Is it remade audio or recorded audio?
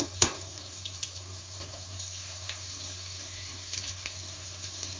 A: remade